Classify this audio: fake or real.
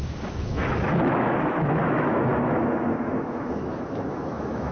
fake